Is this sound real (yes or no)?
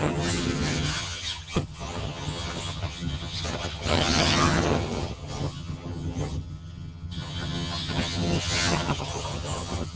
no